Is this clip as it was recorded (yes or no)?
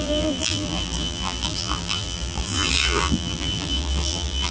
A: no